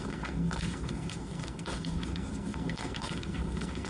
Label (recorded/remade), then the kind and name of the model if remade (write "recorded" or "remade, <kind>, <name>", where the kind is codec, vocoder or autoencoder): remade, codec, SNAC